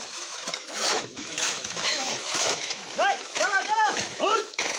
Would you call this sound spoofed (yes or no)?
yes